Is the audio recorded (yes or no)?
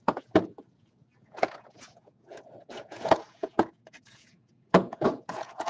no